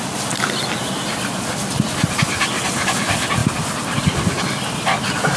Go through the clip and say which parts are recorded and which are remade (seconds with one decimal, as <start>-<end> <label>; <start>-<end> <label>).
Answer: 0.0-5.4 recorded